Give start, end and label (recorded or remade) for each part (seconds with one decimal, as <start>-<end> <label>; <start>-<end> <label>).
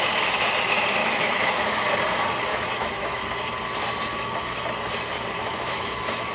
0.0-1.0 recorded; 1.0-1.9 remade; 1.9-2.5 recorded; 2.5-3.2 remade; 3.2-5.4 recorded; 5.4-6.3 remade